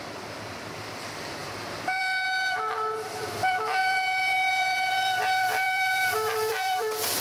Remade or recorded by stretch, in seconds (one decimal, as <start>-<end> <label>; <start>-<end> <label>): 0.0-7.2 remade

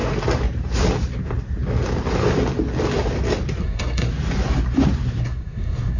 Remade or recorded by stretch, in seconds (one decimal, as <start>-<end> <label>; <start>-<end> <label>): 0.0-3.6 recorded; 3.6-4.1 remade; 4.1-5.2 recorded; 5.2-6.0 remade

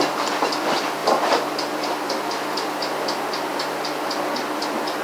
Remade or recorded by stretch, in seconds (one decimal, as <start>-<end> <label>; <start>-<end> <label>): 0.0-1.0 recorded; 1.0-2.3 remade; 2.3-5.0 recorded

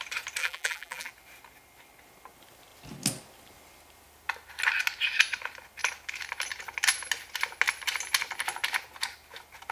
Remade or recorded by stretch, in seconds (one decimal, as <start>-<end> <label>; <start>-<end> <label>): 0.0-0.4 recorded; 0.4-1.1 remade; 1.1-9.7 recorded

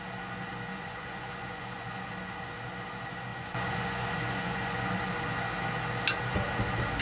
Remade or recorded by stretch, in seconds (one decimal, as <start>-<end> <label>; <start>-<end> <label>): 0.0-0.7 recorded; 0.7-2.1 remade; 2.1-3.3 recorded; 3.3-4.9 remade; 4.9-7.0 recorded

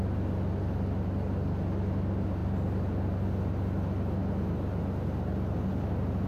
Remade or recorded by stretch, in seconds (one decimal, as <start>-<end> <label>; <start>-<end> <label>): 0.0-6.3 recorded

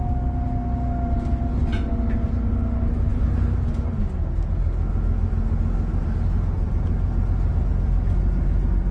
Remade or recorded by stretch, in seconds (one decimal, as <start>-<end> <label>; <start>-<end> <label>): 0.0-8.9 recorded